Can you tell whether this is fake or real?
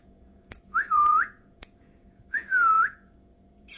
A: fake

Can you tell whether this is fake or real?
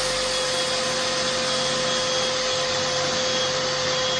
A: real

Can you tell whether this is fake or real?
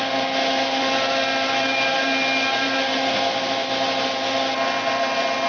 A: real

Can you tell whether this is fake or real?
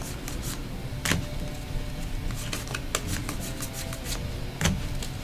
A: real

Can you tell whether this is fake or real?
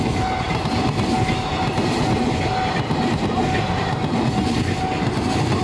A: real